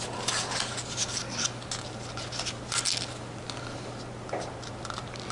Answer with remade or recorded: recorded